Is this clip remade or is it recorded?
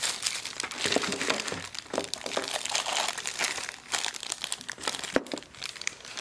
recorded